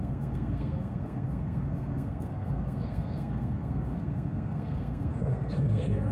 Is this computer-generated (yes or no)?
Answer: yes